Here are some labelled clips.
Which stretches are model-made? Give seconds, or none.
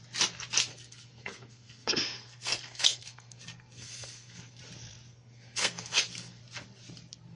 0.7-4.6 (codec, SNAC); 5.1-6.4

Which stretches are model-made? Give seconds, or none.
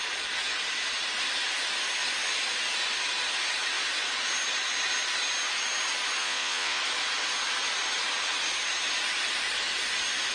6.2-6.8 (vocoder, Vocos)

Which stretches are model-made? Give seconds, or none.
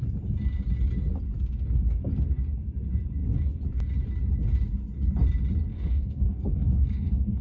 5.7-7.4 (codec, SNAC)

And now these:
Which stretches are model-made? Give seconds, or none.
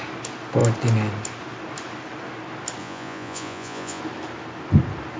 2.8-4.0 (vocoder, Vocos)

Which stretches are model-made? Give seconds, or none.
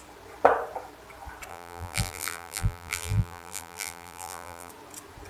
1.5-4.7 (vocoder, BigVGAN v2)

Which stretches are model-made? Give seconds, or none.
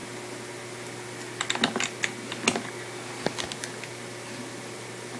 none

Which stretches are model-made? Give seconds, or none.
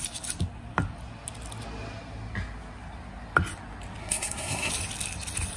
4.0-4.7 (codec, SNAC)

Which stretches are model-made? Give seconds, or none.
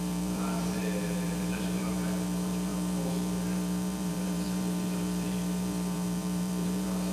0.0-7.1 (vocoder, BigVGAN v2)